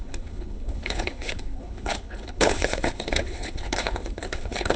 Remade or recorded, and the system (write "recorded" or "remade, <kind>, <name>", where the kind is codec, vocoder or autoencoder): remade, codec, HILCodec